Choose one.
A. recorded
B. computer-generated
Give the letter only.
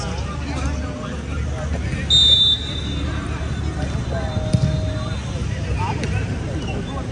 A